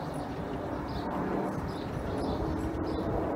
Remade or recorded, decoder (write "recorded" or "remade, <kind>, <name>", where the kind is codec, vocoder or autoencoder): remade, vocoder, BigVGAN v2